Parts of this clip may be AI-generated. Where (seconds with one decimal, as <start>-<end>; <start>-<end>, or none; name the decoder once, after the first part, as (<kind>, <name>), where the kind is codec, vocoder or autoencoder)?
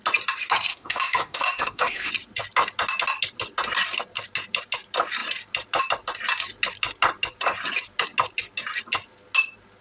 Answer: 0.7-2.1 (autoencoder, DAC-VAE)